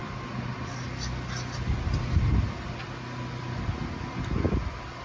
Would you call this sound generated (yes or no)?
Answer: no